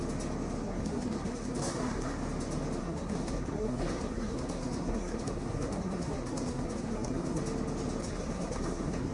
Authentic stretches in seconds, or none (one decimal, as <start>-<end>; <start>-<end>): 0.0-0.6; 2.1-2.8; 7.4-8.0